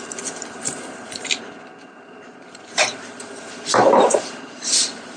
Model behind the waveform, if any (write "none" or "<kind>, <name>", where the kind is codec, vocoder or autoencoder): vocoder, BigVGAN v2